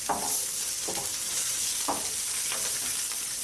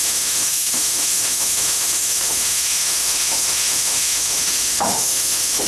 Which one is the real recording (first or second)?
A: first